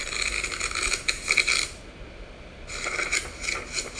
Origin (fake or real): real